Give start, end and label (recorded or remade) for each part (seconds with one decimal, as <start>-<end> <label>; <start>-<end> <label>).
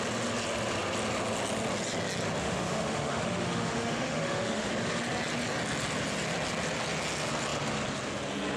0.0-2.4 recorded; 2.4-4.7 remade; 4.7-8.6 recorded